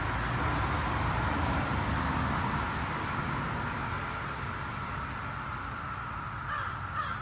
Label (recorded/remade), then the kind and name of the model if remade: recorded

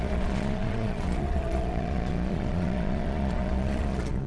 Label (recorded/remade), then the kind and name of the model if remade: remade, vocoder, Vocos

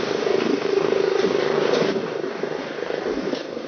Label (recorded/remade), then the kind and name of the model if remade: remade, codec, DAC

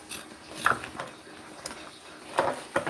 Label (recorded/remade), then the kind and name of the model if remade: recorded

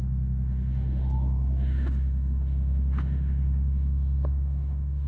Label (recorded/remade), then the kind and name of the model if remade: remade, autoencoder, DAC-VAE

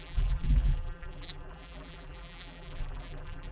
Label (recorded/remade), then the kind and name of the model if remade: remade, vocoder, BigVGAN v2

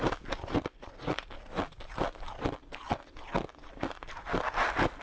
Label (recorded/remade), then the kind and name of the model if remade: recorded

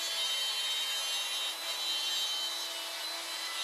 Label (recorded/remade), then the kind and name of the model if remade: recorded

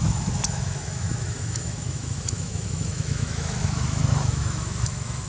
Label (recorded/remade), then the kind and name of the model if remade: remade, autoencoder, DAC-VAE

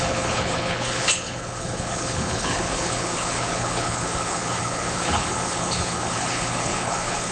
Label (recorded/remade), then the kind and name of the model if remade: remade, codec, HILCodec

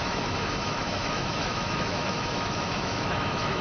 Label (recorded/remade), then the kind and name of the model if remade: remade, autoencoder, DAC-VAE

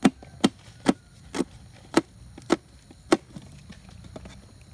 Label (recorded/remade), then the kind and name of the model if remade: recorded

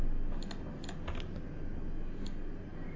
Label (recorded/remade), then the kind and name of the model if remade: recorded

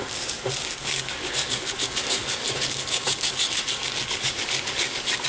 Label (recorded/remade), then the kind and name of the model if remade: remade, codec, DAC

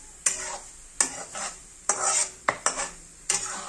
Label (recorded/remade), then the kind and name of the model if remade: recorded